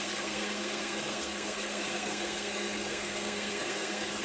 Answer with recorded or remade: remade